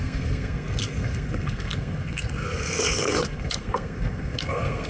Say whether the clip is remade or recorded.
remade